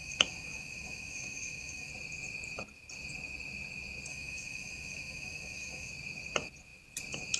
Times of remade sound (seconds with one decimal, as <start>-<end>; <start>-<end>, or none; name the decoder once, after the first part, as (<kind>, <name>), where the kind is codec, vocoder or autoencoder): 0.0-1.9 (autoencoder, DAC-VAE); 4.1-5.9